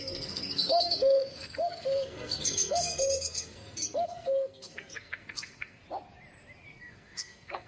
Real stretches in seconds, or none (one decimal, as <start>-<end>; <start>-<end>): 5.8-6.7